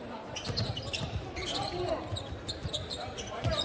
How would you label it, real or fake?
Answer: real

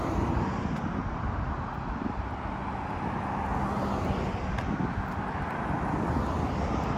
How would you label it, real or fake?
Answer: real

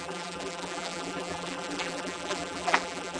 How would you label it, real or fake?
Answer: fake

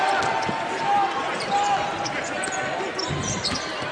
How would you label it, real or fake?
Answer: real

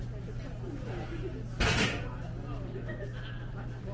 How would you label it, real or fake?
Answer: real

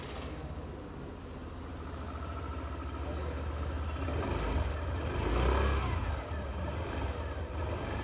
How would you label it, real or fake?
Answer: real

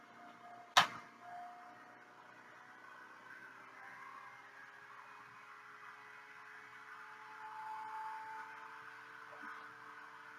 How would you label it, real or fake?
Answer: real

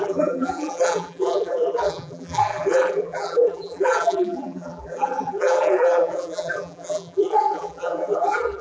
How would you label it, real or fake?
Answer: fake